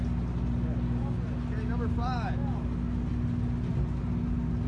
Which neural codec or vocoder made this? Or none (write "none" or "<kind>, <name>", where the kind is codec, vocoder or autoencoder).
none